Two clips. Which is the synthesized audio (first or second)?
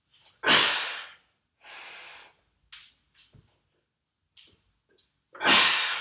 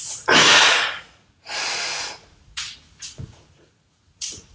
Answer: second